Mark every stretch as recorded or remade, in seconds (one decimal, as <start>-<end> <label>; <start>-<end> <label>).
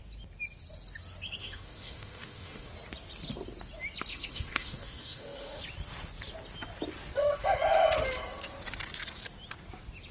0.0-1.4 recorded; 1.4-2.7 remade; 2.7-4.1 recorded; 4.1-5.6 remade; 5.6-10.1 recorded